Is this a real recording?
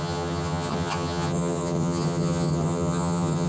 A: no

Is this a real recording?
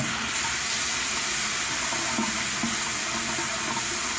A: yes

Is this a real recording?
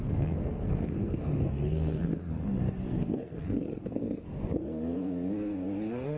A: no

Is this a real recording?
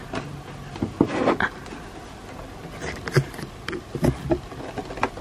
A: yes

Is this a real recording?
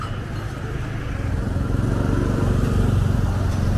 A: yes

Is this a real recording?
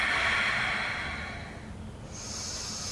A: yes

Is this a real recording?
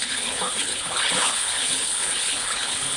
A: no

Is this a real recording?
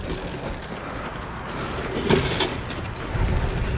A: yes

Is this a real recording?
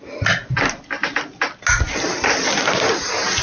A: yes